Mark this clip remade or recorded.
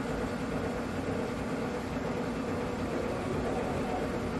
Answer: recorded